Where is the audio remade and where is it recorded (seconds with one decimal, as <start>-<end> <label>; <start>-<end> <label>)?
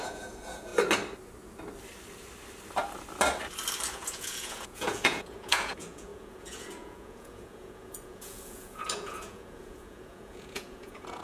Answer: 0.0-0.7 remade; 0.7-3.9 recorded; 3.9-11.2 remade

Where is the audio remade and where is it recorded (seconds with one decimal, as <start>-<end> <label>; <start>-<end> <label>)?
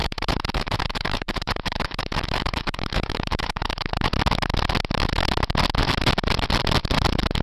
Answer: 0.0-3.9 remade; 3.9-7.4 recorded